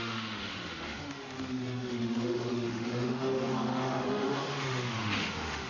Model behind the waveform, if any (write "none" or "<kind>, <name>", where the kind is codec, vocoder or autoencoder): autoencoder, DAC-VAE